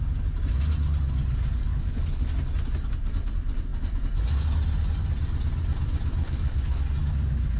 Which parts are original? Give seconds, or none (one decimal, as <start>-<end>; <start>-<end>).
0.0-1.7; 2.3-6.2; 6.8-7.6